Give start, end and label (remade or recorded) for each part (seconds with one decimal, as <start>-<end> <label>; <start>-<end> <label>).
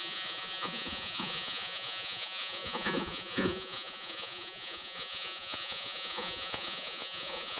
0.0-7.6 remade